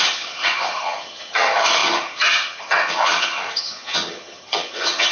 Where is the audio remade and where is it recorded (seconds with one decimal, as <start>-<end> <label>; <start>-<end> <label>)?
0.0-5.1 remade